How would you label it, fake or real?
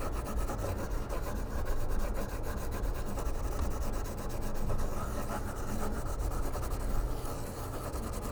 real